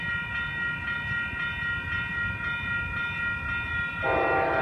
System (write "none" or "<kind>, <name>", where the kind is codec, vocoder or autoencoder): none